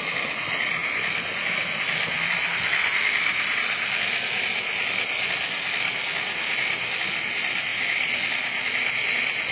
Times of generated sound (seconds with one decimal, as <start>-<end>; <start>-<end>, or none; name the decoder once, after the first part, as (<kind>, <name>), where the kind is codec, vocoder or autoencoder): none